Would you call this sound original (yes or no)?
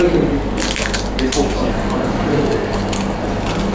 yes